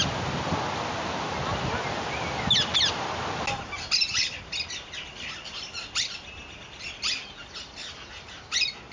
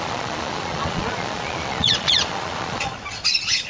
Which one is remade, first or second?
second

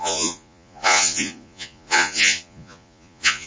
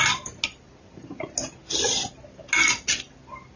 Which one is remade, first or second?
first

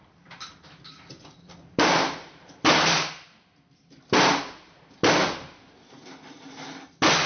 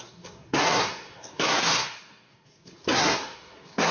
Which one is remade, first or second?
second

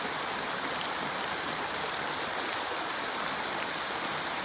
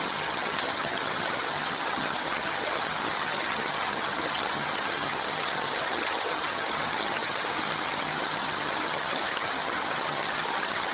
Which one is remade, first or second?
second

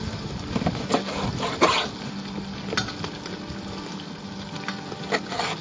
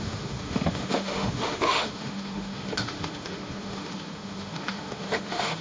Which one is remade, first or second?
second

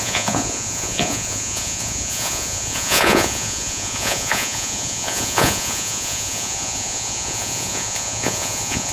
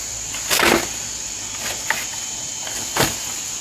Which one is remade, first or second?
first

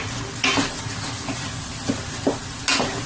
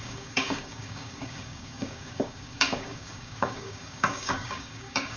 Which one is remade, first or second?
second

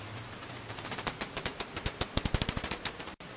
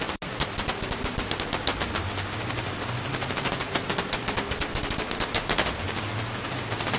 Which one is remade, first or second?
first